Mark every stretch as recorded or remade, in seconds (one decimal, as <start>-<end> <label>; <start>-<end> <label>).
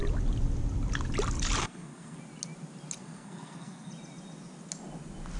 0.0-1.6 recorded; 1.6-2.2 remade; 2.2-3.0 recorded; 3.0-3.9 remade; 3.9-5.4 recorded